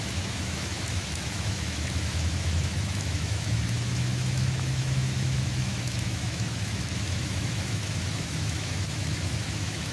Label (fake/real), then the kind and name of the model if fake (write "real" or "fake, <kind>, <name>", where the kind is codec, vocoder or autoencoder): fake, autoencoder, DAC-VAE